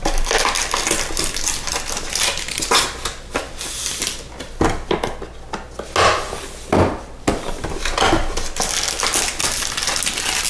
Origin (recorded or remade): recorded